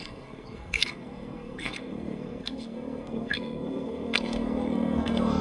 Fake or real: fake